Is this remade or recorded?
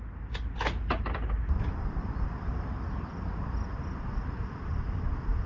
recorded